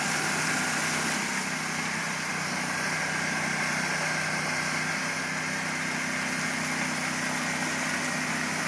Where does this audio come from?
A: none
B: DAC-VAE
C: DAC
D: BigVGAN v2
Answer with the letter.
A